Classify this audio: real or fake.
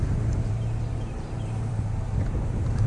fake